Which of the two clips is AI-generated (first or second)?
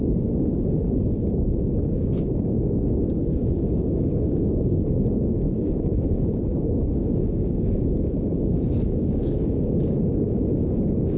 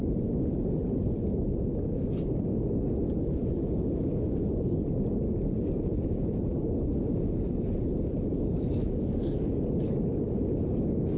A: first